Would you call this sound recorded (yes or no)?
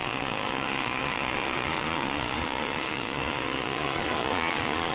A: no